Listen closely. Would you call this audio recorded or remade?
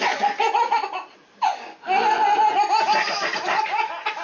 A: recorded